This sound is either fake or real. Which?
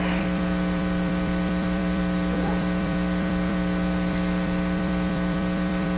fake